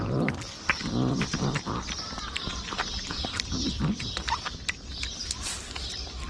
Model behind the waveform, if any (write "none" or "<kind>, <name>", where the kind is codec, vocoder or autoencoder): vocoder, BigVGAN v2